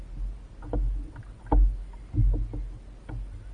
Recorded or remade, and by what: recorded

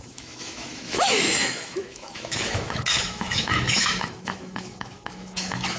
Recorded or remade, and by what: remade, autoencoder, DAC-VAE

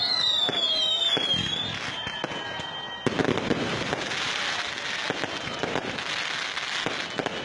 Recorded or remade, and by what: recorded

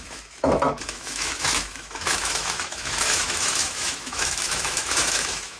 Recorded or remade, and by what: remade, autoencoder, DAC-VAE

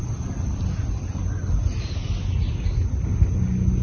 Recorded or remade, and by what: recorded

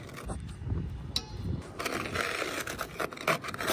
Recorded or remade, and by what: recorded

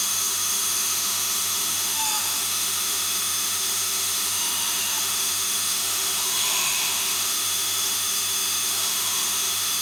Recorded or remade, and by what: remade, autoencoder, DAC-VAE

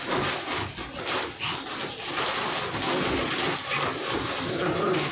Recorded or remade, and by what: recorded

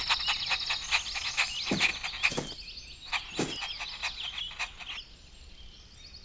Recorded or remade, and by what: recorded